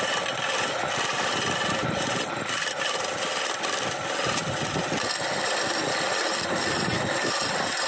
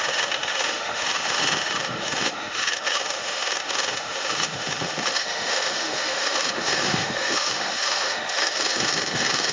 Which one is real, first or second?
first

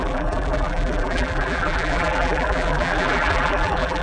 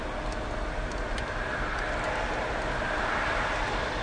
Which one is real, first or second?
second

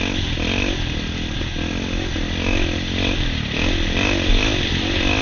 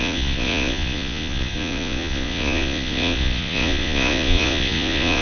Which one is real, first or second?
first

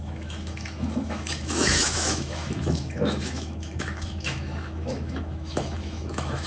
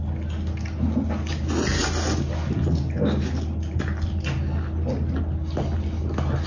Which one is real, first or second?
second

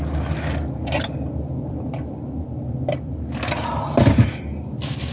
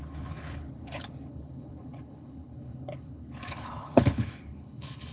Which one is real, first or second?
first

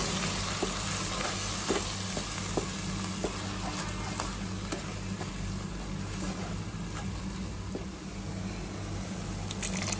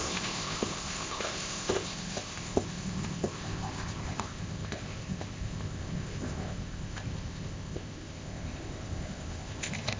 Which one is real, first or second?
first